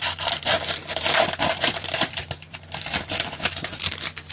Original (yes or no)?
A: no